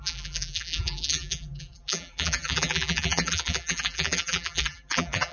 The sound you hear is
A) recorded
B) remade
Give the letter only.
B